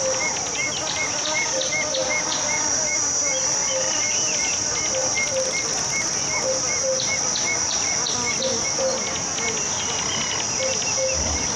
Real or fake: real